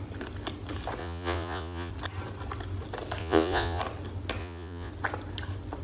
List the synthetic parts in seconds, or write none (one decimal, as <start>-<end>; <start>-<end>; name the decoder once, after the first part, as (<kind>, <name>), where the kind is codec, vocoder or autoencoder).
1.0-1.9 (vocoder, Vocos); 3.2-3.8; 4.4-4.9